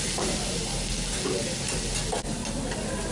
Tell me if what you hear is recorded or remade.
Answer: recorded